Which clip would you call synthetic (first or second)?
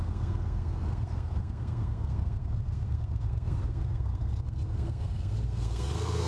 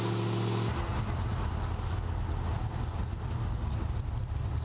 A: first